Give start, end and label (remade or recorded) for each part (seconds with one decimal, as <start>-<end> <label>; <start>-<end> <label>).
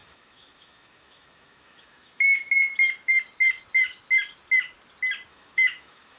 0.0-2.5 remade; 2.5-5.3 recorded; 5.3-6.2 remade